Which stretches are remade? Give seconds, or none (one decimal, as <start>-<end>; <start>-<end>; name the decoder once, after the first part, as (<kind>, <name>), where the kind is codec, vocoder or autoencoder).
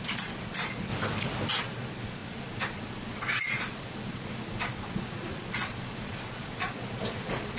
0.0-0.9 (vocoder, Vocos); 1.5-7.6